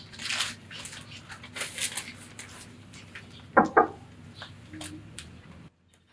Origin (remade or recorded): recorded